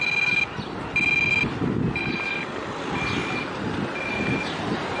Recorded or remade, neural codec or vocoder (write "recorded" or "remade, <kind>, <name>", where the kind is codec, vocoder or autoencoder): recorded